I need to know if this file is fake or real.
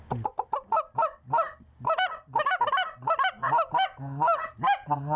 real